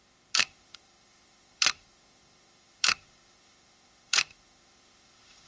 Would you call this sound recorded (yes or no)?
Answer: no